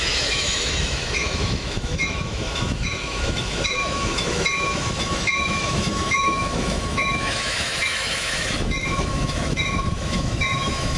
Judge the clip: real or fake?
fake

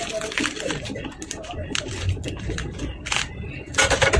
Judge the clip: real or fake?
real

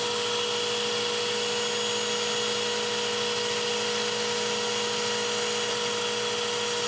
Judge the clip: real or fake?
real